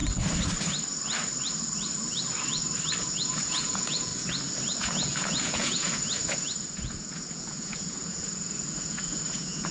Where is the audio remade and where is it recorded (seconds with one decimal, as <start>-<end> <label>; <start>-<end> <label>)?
0.0-3.0 recorded; 3.0-4.1 remade; 4.1-4.8 recorded; 4.8-9.7 remade